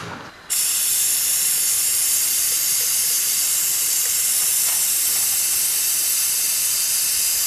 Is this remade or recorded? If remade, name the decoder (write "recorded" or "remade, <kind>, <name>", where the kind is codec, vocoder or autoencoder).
recorded